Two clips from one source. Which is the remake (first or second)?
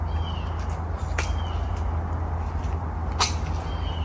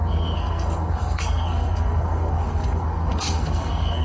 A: second